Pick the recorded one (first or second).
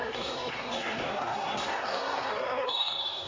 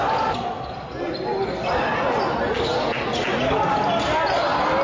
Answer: second